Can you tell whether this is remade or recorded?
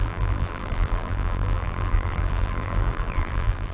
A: remade